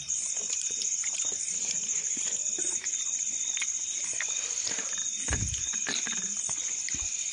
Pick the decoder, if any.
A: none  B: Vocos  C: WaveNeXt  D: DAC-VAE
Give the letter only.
A